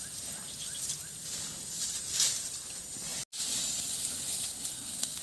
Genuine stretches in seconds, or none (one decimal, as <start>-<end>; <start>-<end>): 0.0-4.7